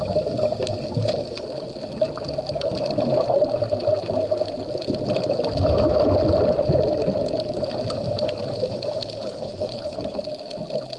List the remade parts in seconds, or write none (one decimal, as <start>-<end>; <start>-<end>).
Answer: 9.3-10.2